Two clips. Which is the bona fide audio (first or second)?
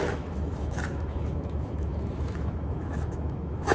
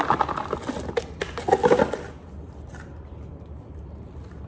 second